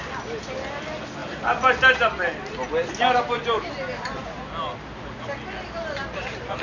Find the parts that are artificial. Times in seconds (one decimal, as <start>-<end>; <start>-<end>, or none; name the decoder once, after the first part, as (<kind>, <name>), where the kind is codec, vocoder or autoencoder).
none